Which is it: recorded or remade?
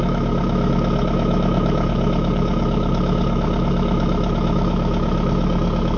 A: remade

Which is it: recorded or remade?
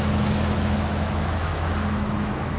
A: remade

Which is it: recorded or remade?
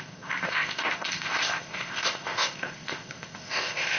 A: remade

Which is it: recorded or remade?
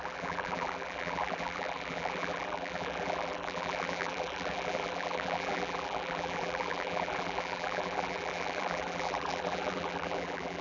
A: remade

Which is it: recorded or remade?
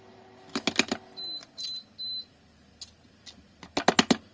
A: recorded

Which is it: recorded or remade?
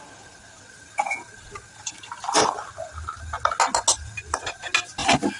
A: recorded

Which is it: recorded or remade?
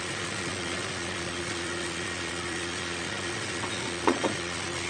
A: remade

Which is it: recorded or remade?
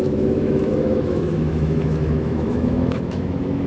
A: remade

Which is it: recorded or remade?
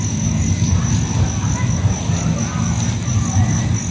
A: recorded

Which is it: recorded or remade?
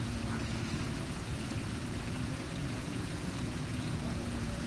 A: remade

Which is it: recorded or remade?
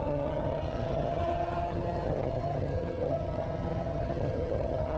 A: remade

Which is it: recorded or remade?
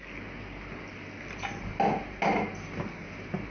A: recorded